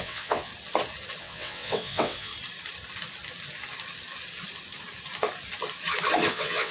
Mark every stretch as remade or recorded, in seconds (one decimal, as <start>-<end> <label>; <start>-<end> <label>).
0.0-0.5 remade; 0.5-1.2 recorded; 1.2-2.3 remade; 2.3-6.3 recorded; 6.3-6.7 remade